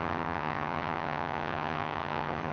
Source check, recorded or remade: remade